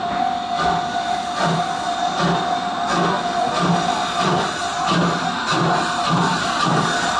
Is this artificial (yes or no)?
no